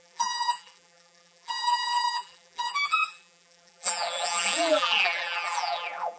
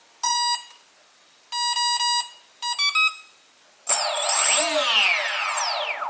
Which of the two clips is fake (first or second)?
first